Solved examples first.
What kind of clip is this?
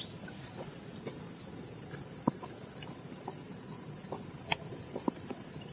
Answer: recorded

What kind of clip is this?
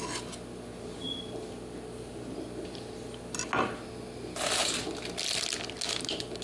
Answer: recorded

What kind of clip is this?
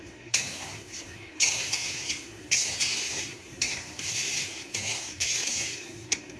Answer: remade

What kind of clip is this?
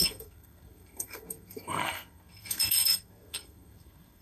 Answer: remade